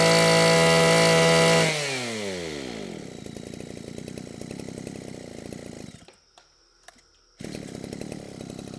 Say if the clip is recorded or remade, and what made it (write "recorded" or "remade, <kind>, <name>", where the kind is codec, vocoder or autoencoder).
recorded